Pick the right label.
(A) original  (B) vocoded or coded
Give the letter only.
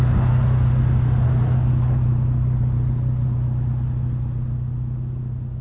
A